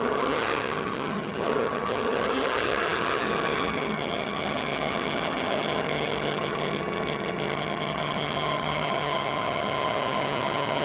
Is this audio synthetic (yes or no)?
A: yes